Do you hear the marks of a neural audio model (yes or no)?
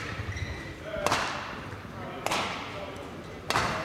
no